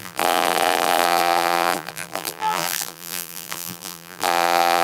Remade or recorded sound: remade